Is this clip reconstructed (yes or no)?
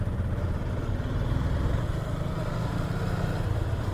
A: no